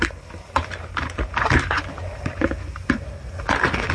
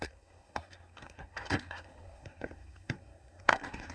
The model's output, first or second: second